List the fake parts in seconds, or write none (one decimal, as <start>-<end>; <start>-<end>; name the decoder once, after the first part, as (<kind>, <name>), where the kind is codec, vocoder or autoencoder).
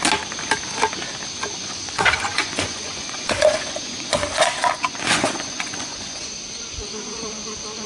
1.6-6.3 (vocoder, Vocos)